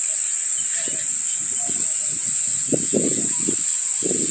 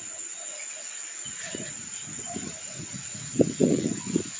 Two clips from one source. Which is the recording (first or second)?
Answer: first